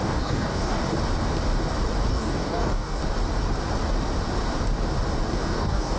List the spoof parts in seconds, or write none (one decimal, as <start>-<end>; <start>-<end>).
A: 0.0-0.8; 2.1-3.0; 5.4-6.0